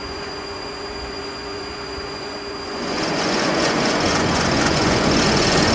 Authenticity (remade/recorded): remade